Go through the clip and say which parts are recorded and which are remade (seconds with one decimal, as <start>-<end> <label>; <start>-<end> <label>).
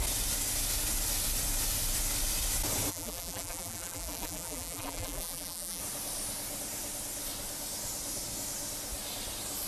0.0-2.9 recorded; 2.9-5.8 remade; 5.8-9.7 recorded